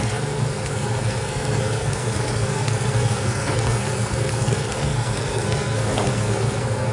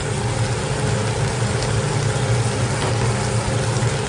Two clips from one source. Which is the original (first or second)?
second